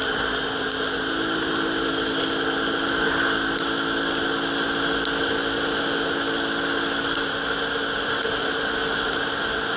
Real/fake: real